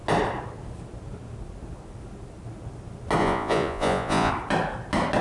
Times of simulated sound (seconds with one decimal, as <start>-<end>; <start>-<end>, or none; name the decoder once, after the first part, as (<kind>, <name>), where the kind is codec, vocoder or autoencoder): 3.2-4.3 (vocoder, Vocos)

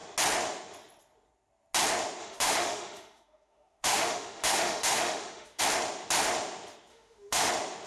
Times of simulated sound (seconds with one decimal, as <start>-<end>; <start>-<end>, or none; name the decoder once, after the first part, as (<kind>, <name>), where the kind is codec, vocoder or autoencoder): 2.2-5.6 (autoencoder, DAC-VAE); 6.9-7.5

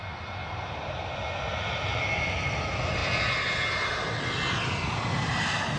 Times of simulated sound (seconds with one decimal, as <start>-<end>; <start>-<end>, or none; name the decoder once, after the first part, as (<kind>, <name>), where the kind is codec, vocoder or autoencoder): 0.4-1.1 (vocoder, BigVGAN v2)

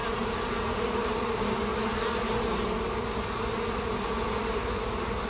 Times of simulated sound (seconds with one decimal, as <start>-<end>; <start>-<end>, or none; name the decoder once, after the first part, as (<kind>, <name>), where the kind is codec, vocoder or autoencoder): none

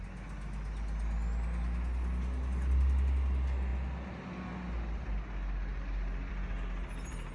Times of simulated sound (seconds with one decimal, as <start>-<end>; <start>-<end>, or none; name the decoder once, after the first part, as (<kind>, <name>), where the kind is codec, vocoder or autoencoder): none